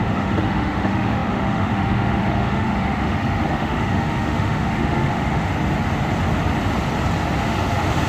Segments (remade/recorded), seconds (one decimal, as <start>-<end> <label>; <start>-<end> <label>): 0.0-5.5 remade; 5.5-7.4 recorded; 7.4-8.1 remade